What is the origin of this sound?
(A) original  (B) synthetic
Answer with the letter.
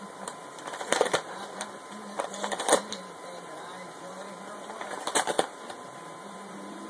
B